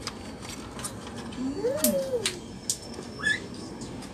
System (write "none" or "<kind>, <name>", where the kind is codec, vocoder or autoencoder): none